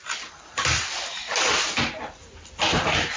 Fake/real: real